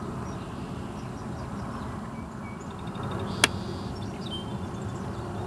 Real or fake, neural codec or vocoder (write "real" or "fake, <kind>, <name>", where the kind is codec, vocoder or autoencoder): real